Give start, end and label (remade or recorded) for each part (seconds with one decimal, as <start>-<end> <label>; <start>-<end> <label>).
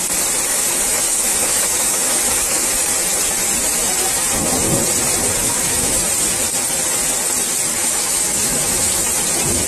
0.0-0.5 recorded; 0.5-2.9 remade; 2.9-5.4 recorded; 5.4-6.0 remade; 6.0-7.7 recorded; 7.7-9.0 remade; 9.0-9.7 recorded